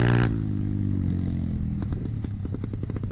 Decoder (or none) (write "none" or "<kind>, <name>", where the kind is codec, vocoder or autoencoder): none